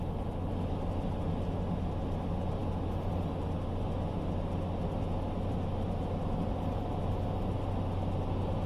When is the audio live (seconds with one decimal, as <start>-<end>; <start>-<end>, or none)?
0.0-8.7